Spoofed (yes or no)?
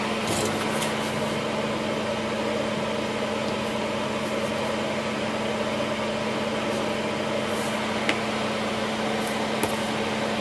no